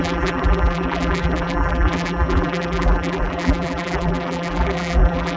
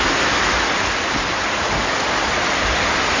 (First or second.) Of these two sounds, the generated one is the first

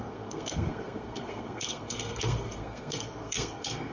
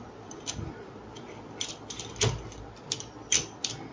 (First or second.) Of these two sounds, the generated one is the first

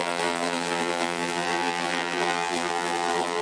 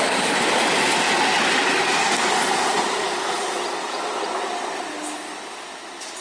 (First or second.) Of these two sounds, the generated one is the first